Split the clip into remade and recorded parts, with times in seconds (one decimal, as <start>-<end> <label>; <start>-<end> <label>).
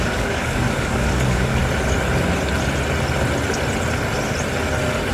0.0-1.6 remade; 1.6-5.1 recorded